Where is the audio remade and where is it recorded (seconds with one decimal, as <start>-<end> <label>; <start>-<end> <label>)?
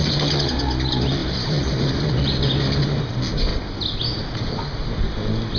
0.0-1.2 recorded; 1.2-2.1 remade; 2.1-5.6 recorded